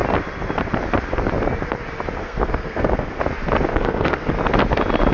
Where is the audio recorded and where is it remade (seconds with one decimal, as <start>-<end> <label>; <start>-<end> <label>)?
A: 0.0-2.2 recorded; 2.2-3.2 remade; 3.2-3.7 recorded; 3.7-4.3 remade; 4.3-5.1 recorded